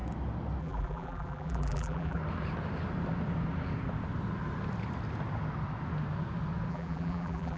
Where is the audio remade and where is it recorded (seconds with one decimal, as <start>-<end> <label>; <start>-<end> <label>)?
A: 0.0-0.6 recorded; 0.6-2.2 remade; 2.2-6.7 recorded; 6.7-7.6 remade